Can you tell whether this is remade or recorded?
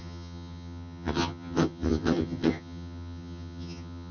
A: remade